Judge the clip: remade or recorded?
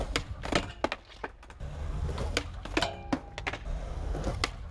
recorded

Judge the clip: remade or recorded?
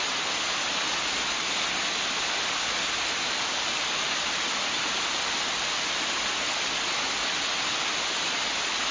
recorded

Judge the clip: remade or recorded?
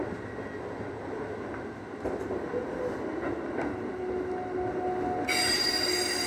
recorded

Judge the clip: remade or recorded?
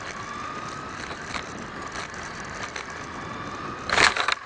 recorded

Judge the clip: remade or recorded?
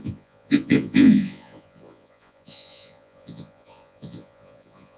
remade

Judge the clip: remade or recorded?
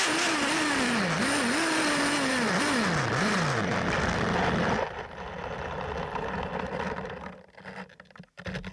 recorded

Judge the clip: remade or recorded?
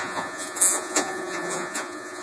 remade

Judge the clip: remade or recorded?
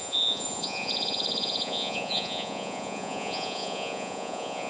remade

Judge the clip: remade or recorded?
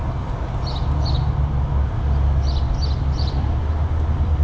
recorded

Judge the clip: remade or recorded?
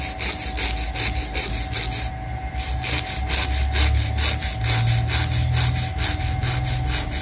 recorded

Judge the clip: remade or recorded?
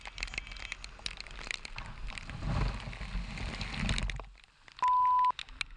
recorded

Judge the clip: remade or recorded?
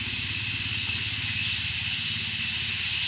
recorded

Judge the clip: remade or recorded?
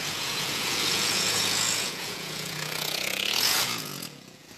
remade